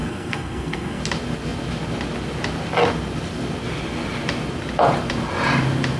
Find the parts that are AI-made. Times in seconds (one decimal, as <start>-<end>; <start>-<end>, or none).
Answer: 0.0-1.0